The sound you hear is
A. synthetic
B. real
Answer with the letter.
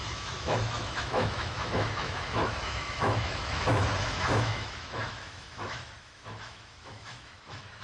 A